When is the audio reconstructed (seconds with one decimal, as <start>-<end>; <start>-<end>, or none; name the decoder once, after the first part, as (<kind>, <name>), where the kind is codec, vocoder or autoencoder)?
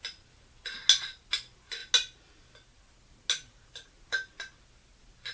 none